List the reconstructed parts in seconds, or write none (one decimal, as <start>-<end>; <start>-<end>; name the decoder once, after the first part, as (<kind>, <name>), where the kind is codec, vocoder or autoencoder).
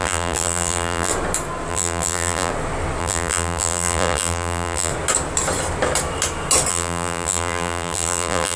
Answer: 0.0-1.1 (vocoder, BigVGAN v2); 1.7-2.5; 3.0-4.9; 6.7-8.6